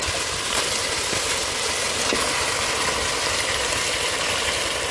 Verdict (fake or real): fake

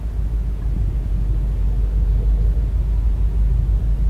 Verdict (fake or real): real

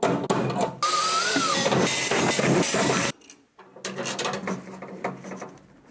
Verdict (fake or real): real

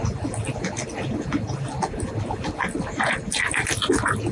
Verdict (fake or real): real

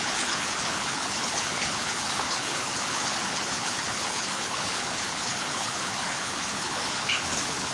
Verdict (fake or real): fake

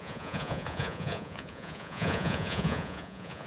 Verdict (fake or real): fake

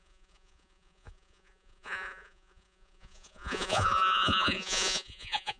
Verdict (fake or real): fake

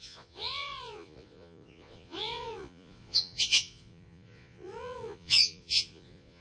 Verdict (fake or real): fake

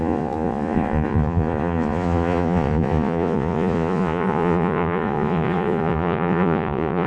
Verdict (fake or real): fake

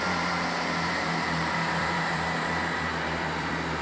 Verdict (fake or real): fake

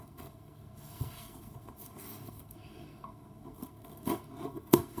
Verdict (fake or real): fake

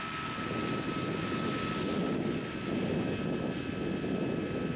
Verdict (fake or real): real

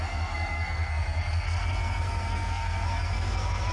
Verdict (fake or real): fake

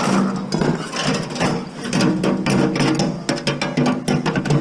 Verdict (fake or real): real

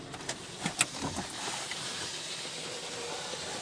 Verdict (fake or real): real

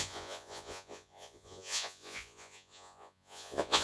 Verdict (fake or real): fake